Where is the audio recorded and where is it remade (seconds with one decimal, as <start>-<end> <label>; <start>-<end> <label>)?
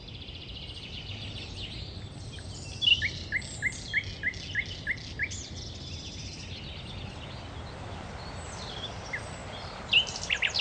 0.0-10.6 recorded